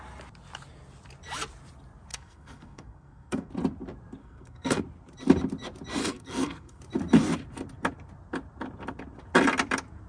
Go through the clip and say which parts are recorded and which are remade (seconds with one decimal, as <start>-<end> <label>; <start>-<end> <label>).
0.0-2.1 recorded; 2.1-3.5 remade; 3.5-4.2 recorded; 4.2-4.8 remade; 4.8-6.0 recorded; 6.0-6.8 remade; 6.8-10.1 recorded